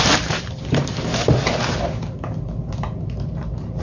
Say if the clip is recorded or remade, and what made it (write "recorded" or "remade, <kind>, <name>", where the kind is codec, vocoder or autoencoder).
remade, vocoder, BigVGAN v2